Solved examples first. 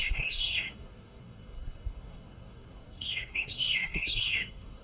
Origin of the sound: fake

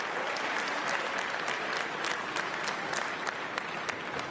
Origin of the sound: real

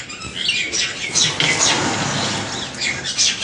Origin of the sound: real